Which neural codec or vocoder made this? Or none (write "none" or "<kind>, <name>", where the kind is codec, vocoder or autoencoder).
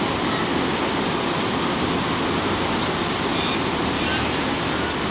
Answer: none